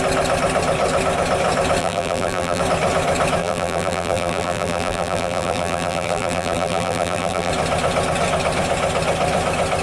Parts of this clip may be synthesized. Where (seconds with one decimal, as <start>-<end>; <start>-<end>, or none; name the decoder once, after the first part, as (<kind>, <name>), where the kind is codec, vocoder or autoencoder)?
1.8-2.6 (vocoder, BigVGAN v2); 3.4-7.5